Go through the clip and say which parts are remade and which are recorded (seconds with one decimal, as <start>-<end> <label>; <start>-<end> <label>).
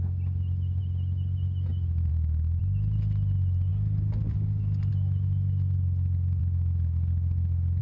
0.0-7.8 recorded